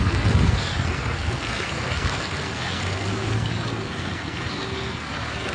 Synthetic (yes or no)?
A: yes